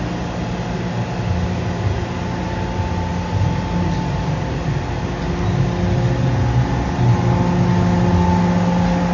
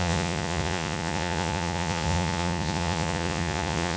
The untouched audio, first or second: first